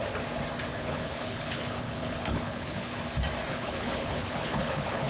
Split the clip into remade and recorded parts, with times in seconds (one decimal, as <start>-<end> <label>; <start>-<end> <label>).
0.0-0.7 recorded; 0.7-3.0 remade; 3.0-3.5 recorded; 3.5-5.1 remade